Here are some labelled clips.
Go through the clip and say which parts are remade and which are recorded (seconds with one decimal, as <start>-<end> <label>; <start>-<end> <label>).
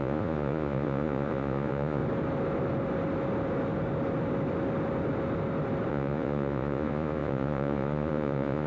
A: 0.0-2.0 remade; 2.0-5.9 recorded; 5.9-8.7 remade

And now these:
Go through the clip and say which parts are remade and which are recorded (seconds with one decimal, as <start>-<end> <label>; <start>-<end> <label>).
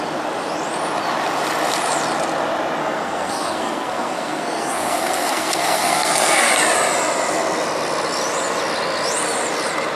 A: 0.0-2.8 recorded; 2.8-6.5 remade; 6.5-10.0 recorded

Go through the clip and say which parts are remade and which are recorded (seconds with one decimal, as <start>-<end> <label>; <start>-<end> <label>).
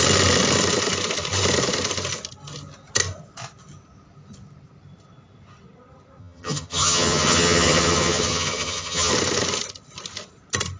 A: 0.0-6.2 recorded; 6.2-9.1 remade; 9.1-10.8 recorded